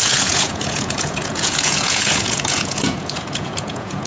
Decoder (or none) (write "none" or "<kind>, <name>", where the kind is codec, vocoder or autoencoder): vocoder, Vocos